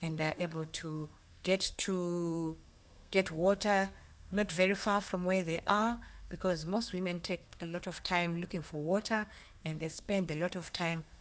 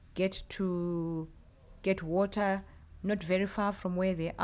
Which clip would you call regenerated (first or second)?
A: first